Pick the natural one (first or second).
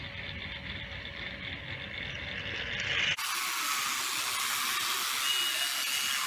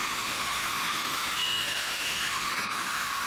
first